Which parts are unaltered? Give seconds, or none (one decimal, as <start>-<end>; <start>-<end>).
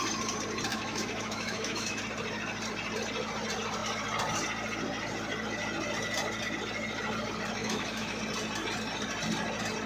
0.0-0.7; 2.0-7.6; 8.2-9.9